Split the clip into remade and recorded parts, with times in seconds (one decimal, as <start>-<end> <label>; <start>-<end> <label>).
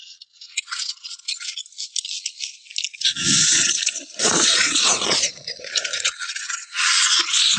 0.0-1.6 remade; 1.6-2.9 recorded; 2.9-7.6 remade